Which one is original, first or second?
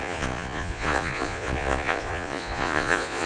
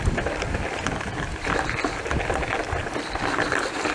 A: second